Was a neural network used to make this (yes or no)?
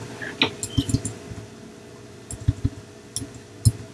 no